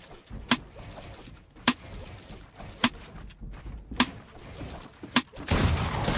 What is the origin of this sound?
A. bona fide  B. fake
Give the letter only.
A